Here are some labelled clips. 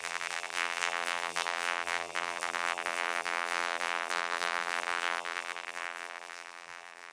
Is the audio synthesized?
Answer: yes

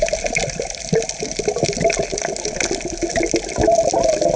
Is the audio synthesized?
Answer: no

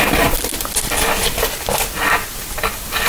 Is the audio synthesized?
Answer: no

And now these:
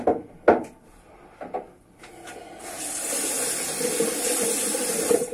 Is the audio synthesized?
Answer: no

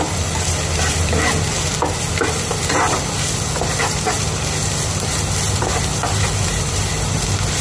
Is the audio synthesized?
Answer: yes